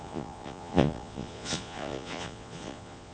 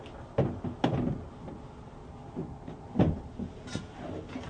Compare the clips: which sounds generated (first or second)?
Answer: first